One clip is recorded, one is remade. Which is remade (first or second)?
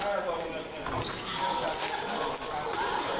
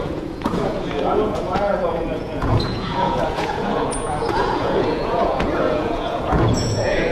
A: second